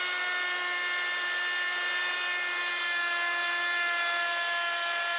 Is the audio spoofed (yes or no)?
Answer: no